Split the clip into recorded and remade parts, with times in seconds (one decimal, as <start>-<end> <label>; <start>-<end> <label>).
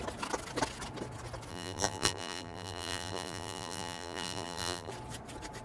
0.0-1.5 recorded; 1.5-4.9 remade; 4.9-5.6 recorded